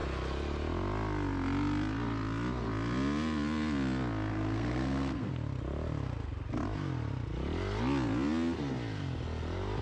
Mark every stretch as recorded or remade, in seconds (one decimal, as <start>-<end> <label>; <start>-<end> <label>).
0.0-4.3 recorded; 4.3-5.3 remade; 5.3-9.8 recorded